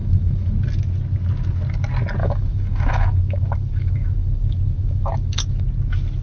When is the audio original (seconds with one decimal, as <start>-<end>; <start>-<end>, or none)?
0.5-2.2; 5.6-6.2